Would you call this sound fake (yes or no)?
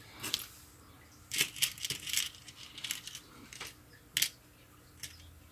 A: no